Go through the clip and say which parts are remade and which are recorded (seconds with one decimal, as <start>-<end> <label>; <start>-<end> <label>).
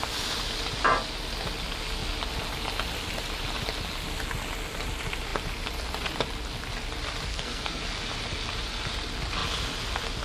0.0-7.3 recorded; 7.3-7.8 remade; 7.8-10.2 recorded